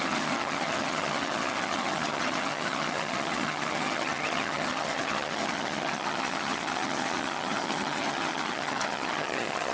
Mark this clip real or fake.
fake